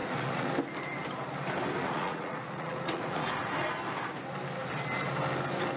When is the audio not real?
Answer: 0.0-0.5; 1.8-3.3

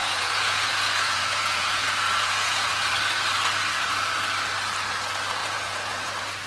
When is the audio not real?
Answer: 0.0-2.7; 5.4-6.1